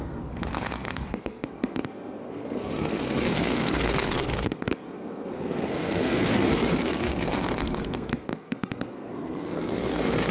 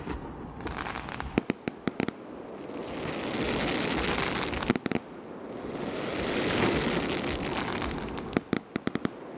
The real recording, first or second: second